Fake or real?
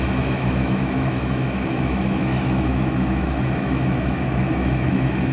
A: fake